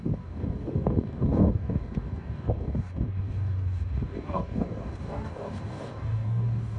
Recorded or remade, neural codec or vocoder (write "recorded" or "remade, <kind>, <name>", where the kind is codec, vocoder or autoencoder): remade, codec, DAC